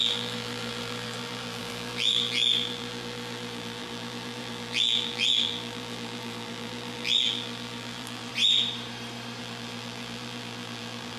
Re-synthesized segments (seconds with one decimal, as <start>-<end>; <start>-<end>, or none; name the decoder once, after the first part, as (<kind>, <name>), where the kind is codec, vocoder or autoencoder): 0.0-8.3 (vocoder, BigVGAN v2); 9.4-11.2